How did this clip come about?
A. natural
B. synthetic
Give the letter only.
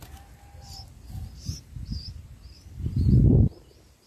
A